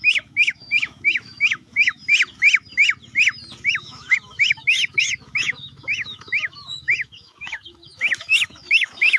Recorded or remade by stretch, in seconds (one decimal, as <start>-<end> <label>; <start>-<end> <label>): 0.0-2.0 remade; 2.0-3.7 recorded; 3.7-9.2 remade